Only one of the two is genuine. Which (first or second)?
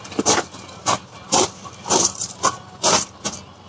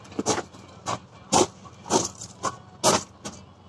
second